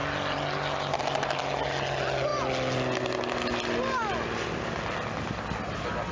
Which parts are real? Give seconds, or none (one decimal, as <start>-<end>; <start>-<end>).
0.0-6.1